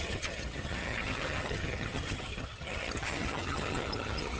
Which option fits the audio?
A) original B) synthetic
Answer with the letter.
B